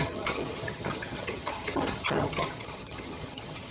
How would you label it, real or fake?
fake